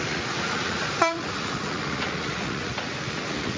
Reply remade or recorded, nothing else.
remade